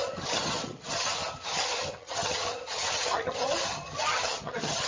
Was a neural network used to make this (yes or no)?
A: yes